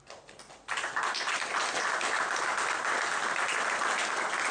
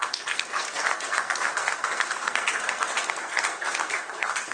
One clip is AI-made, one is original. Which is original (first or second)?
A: first